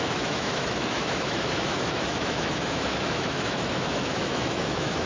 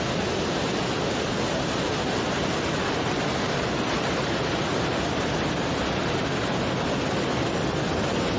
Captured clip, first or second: second